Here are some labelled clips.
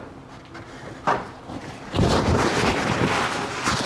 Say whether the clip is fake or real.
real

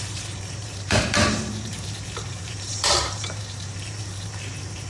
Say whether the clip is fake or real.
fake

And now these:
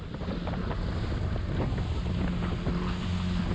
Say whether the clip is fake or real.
real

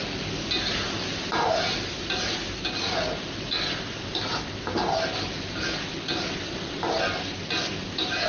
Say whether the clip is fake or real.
real